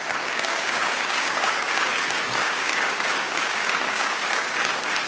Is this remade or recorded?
remade